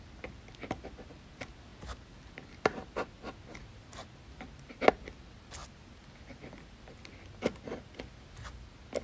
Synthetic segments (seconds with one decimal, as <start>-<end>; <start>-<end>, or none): none